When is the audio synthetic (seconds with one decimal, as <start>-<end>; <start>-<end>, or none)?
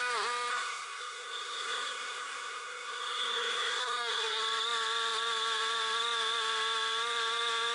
0.5-4.4